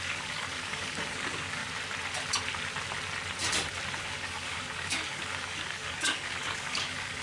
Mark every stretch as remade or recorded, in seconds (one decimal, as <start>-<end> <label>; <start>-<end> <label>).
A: 0.0-1.6 remade; 1.6-4.0 recorded; 4.0-7.2 remade